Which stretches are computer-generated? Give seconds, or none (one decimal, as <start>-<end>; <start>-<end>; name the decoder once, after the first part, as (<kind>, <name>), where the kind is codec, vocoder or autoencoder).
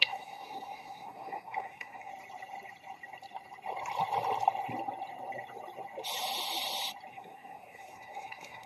0.0-2.1 (codec, SNAC); 7.1-8.7